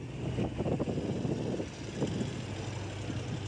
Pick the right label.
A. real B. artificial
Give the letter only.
A